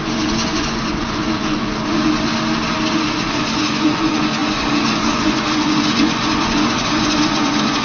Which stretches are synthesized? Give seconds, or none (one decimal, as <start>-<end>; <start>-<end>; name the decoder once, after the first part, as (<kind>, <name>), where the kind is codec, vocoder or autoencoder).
0.0-2.3 (vocoder, Vocos); 2.9-7.8